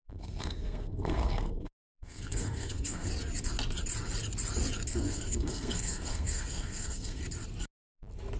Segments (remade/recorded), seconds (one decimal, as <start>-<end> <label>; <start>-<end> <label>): 0.0-3.1 remade; 3.1-4.9 recorded; 4.9-7.2 remade; 7.2-8.4 recorded